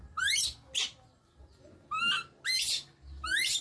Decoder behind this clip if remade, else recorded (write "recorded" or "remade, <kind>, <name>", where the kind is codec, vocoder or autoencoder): recorded